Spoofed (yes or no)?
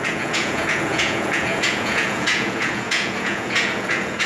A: yes